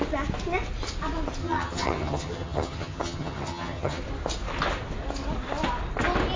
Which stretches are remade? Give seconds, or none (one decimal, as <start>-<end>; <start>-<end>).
1.4-4.0

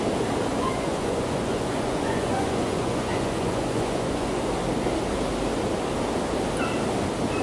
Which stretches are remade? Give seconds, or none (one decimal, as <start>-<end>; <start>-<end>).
0.5-4.4